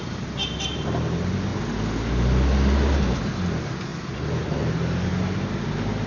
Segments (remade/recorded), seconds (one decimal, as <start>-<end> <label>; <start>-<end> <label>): 0.0-1.5 remade; 1.5-2.9 recorded; 2.9-3.9 remade; 3.9-4.4 recorded; 4.4-5.1 remade; 5.1-6.1 recorded

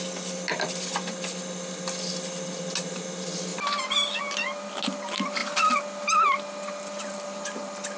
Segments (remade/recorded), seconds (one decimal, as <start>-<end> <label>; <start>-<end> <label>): 0.0-8.0 recorded

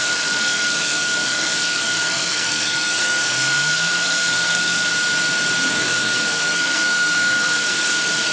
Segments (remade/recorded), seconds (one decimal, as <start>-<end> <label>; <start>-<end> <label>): 0.0-4.9 remade; 4.9-5.7 recorded; 5.7-8.3 remade